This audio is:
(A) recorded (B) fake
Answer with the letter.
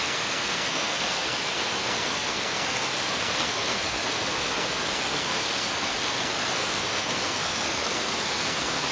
B